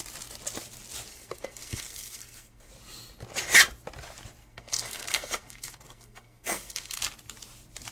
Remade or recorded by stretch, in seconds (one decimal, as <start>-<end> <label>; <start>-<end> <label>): 0.0-1.1 recorded; 1.1-2.7 remade; 2.7-4.4 recorded; 4.4-7.0 remade; 7.0-7.9 recorded